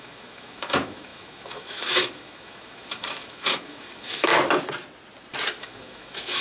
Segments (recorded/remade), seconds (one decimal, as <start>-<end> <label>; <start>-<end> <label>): 0.0-4.3 remade; 4.3-5.6 recorded; 5.6-6.4 remade